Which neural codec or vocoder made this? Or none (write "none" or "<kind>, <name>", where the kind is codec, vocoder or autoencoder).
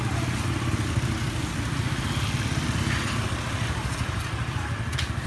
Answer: none